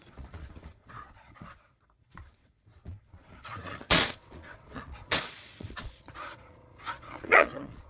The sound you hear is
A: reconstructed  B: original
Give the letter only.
A